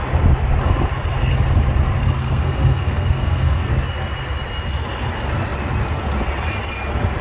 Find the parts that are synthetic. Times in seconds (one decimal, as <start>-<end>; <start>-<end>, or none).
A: 2.2-3.7